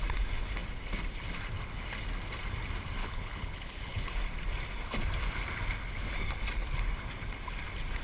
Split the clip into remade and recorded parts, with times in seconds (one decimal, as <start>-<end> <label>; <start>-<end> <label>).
0.0-3.0 recorded; 3.0-4.1 remade; 4.1-8.0 recorded